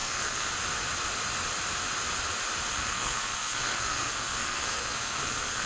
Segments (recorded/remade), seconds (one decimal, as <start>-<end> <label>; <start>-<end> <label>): 0.0-0.5 remade; 0.5-2.7 recorded; 2.7-5.7 remade